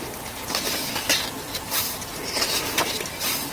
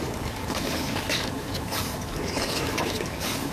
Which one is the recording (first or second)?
first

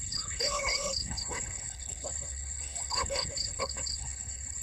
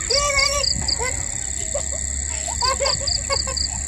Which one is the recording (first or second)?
second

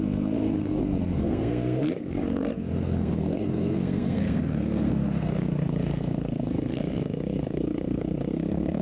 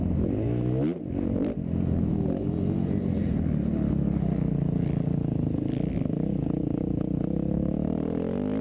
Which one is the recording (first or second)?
second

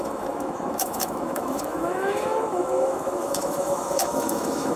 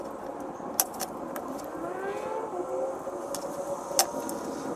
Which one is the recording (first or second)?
second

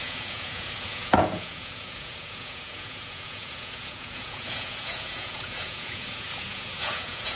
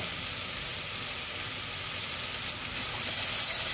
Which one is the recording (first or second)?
second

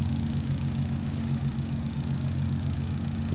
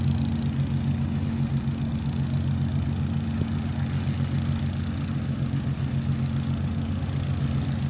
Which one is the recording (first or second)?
second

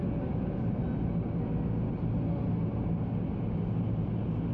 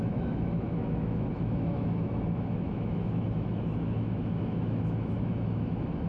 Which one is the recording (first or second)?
first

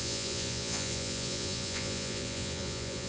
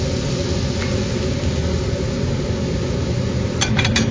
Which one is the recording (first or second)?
second